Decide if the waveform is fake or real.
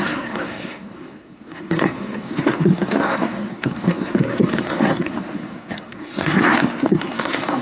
fake